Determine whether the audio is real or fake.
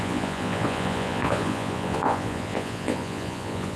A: fake